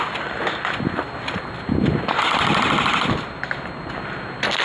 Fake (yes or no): no